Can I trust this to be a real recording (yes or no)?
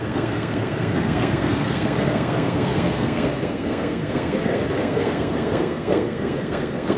no